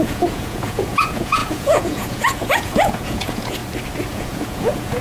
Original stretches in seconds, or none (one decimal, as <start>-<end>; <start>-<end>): 3.6-4.1